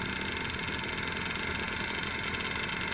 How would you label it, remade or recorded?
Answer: recorded